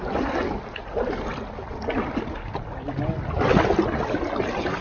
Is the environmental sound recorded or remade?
recorded